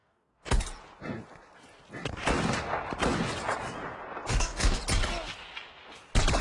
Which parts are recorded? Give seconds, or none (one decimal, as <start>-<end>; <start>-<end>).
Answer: 0.6-4.3; 4.8-6.4